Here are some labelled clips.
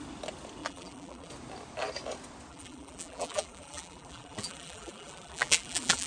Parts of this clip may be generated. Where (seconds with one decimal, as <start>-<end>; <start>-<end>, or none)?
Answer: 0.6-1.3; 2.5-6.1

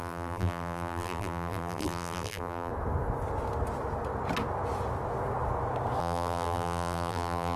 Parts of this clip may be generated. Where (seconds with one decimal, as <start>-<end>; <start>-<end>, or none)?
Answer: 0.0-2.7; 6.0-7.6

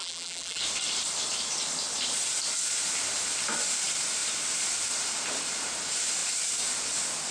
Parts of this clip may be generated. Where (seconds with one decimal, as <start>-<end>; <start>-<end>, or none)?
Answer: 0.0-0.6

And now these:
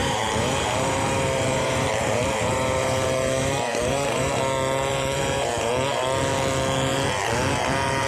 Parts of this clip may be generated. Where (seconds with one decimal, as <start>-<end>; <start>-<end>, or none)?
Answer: 0.0-4.4; 4.9-5.7

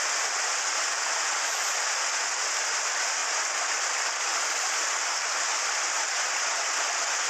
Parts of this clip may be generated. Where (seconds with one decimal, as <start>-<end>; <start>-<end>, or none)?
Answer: none